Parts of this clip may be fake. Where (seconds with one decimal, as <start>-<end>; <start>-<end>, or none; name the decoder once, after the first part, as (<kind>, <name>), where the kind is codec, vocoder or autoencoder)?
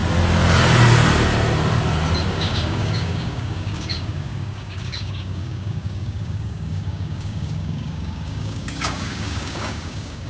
2.3-10.3 (codec, DAC)